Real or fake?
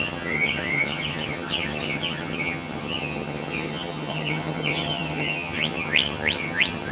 fake